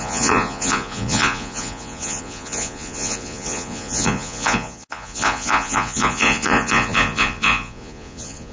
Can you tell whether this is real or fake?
fake